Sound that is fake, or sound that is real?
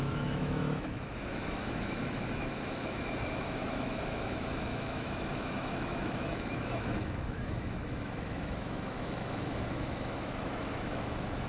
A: fake